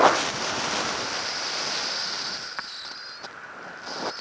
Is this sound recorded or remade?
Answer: recorded